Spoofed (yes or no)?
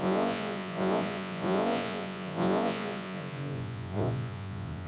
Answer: yes